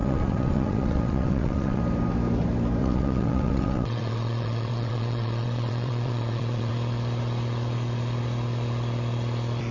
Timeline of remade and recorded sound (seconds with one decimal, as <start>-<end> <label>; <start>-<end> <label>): 0.0-1.8 remade; 1.8-2.8 recorded; 2.8-6.7 remade; 6.7-9.7 recorded